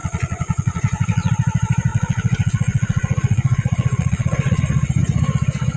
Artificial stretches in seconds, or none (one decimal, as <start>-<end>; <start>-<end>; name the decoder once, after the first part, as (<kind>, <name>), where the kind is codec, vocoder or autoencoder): 0.0-1.3 (vocoder, Vocos); 1.9-4.6